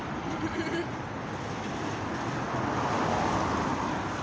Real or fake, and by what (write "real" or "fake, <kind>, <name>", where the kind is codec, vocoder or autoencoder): real